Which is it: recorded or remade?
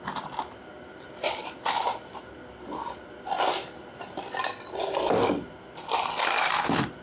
recorded